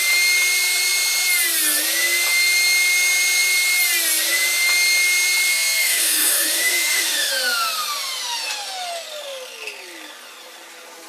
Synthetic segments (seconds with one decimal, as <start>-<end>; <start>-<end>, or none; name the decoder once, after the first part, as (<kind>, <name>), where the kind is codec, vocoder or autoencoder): 5.5-7.3 (autoencoder, DAC-VAE)